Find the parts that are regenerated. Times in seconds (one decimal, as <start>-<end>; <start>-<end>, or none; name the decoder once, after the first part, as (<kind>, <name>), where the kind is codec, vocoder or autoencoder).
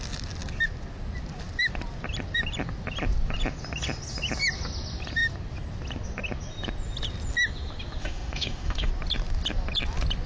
8.0-8.9 (autoencoder, DAC-VAE)